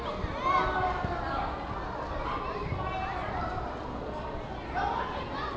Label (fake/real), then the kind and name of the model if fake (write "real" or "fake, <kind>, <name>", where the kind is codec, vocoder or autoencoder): real